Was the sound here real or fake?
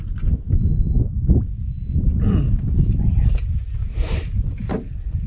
real